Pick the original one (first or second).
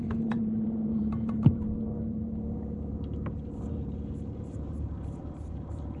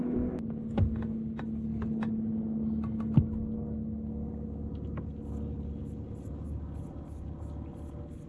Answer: second